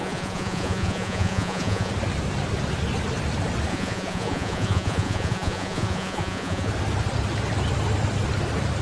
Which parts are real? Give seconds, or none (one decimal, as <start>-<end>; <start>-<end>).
1.9-3.7; 6.7-8.8

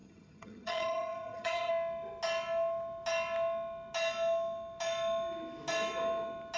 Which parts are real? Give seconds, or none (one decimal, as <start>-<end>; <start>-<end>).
1.7-6.6

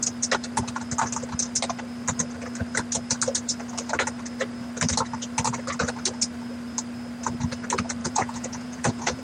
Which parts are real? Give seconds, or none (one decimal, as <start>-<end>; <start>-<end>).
0.0-8.0

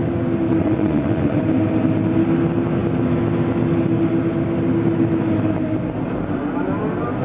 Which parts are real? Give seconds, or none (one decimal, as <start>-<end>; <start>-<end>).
0.0-0.6; 1.4-7.2